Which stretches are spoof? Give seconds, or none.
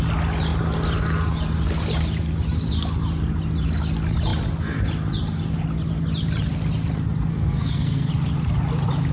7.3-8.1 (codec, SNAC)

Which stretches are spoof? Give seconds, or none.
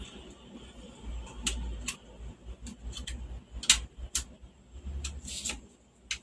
none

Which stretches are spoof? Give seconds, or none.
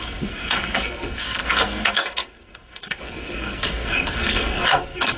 0.0-5.2 (codec, SNAC)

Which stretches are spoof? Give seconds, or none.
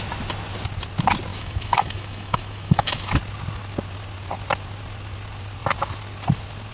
1.3-3.1 (autoencoder, DAC-VAE)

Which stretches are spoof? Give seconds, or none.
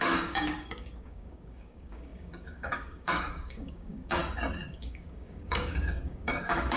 0.0-4.2 (codec, DAC); 4.8-6.8